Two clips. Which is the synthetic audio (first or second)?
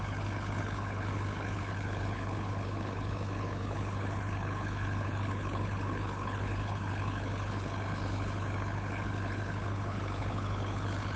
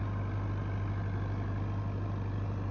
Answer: first